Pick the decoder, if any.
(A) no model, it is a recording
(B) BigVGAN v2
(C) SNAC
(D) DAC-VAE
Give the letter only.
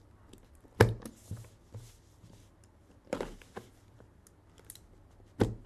A